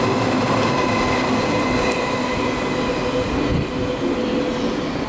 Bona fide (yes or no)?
yes